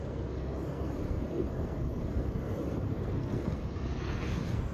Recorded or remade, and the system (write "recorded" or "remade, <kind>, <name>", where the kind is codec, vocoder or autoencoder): remade, codec, SNAC